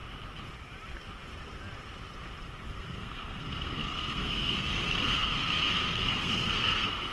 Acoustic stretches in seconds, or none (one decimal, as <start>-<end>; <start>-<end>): 0.0-2.7